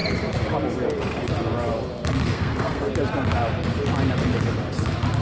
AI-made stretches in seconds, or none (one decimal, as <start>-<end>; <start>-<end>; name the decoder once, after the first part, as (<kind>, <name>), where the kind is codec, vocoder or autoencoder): 2.2-2.9 (codec, SNAC)